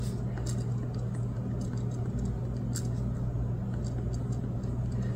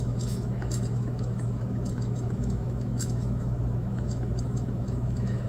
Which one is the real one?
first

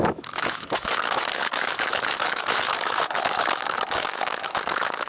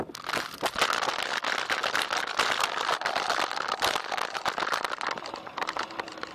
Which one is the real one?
second